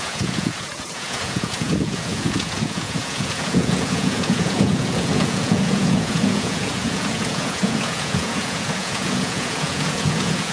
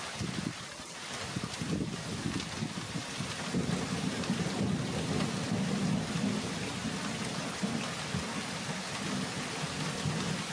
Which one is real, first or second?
second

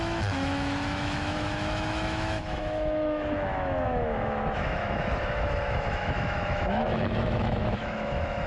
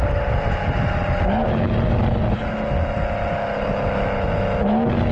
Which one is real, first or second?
second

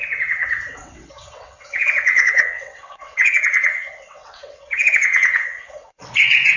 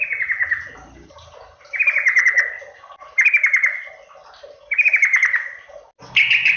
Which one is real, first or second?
second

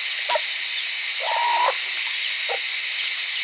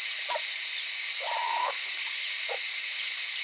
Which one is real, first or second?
first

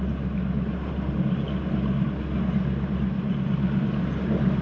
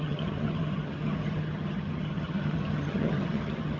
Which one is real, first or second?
first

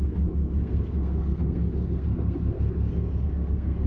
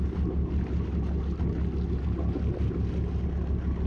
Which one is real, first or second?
second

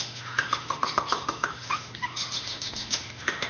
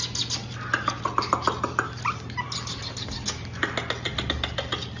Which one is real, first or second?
second